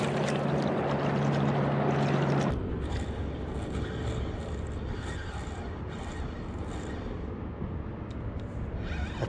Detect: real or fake real